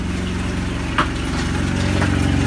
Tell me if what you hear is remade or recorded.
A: recorded